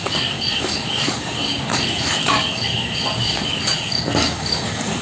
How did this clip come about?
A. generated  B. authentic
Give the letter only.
A